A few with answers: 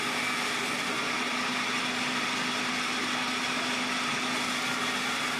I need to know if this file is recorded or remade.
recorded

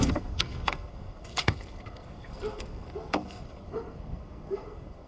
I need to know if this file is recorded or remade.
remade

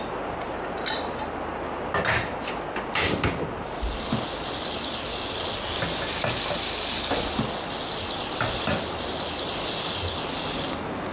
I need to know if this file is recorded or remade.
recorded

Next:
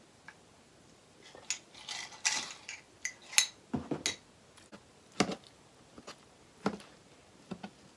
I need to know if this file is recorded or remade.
recorded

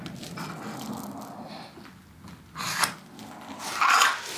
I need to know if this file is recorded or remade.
recorded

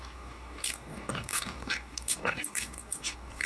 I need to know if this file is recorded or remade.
remade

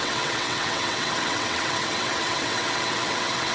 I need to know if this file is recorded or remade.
remade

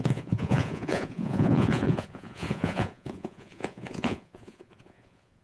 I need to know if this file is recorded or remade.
remade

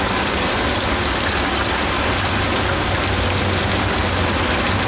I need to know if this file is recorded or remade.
recorded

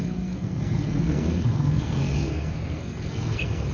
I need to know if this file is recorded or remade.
remade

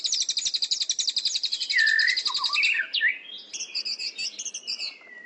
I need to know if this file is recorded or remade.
recorded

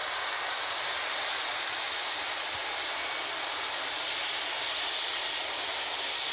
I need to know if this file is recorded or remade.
recorded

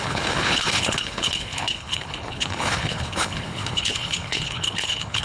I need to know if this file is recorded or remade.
remade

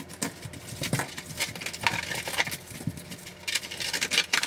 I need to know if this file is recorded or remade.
recorded